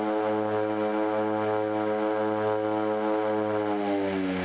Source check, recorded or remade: recorded